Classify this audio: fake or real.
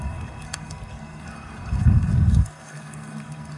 fake